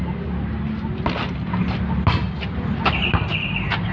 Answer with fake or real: real